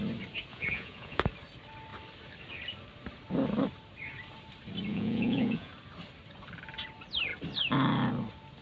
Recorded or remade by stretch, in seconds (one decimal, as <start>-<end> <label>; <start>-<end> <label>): 0.0-0.5 recorded; 0.5-1.2 remade; 1.2-4.9 recorded; 4.9-5.7 remade; 5.7-8.6 recorded